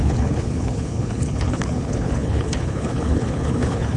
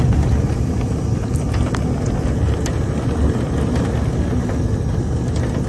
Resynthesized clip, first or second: first